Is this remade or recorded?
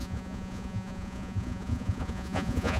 remade